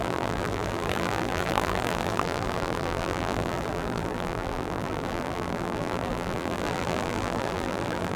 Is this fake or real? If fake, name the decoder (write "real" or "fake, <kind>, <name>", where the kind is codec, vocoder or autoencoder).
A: fake, vocoder, BigVGAN v2